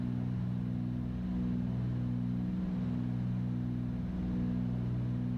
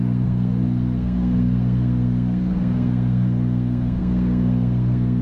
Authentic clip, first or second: first